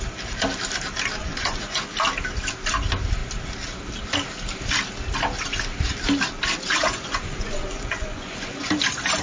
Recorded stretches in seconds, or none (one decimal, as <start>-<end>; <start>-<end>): 0.0-1.2; 1.9-6.8; 8.7-9.2